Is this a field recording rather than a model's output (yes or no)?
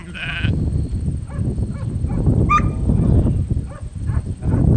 yes